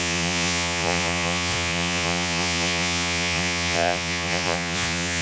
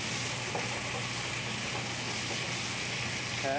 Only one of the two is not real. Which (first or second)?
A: first